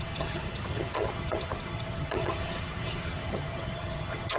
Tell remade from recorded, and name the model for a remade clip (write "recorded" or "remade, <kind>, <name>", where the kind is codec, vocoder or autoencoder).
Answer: remade, vocoder, HiFi-GAN